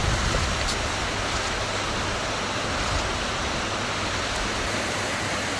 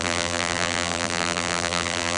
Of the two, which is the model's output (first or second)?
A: second